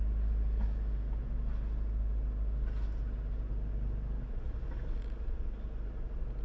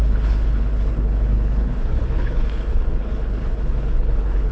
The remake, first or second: second